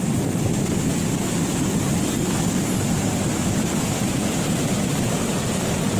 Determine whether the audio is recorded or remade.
recorded